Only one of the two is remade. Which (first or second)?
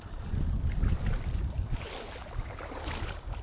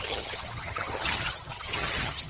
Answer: second